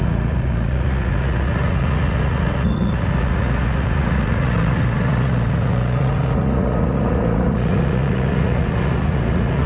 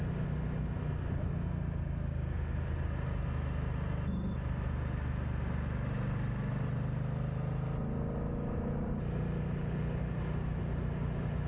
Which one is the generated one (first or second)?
first